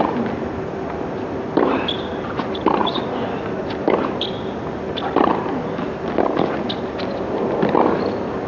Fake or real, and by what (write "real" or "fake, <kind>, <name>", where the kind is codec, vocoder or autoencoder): real